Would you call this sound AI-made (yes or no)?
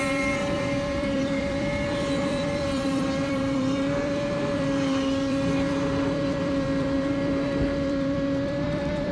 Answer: yes